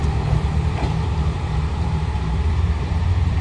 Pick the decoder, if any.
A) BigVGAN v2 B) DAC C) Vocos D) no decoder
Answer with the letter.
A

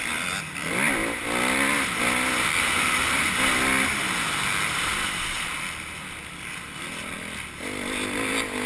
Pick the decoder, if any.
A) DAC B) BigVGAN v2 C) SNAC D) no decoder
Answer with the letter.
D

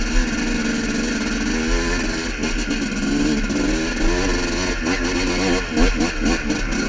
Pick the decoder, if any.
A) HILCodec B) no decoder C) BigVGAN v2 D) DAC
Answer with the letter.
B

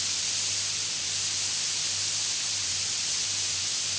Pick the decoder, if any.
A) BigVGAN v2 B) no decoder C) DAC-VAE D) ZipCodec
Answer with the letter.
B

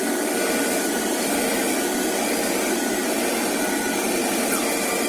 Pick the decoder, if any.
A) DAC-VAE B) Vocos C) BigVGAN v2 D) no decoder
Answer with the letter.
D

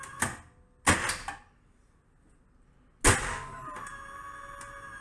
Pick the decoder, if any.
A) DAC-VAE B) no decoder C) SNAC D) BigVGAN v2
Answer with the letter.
B